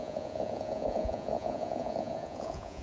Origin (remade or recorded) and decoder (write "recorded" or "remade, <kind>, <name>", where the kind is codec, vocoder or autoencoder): remade, vocoder, Vocos